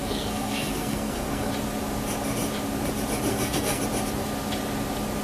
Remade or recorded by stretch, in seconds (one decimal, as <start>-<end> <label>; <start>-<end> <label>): 0.0-1.5 remade; 1.5-3.3 recorded; 3.3-3.8 remade; 3.8-5.2 recorded